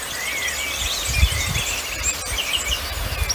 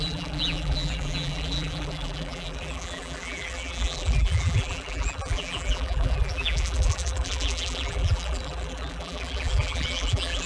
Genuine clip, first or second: first